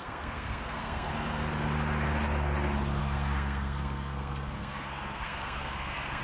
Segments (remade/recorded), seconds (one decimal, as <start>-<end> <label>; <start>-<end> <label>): 0.0-1.1 remade; 1.1-3.0 recorded; 3.0-6.2 remade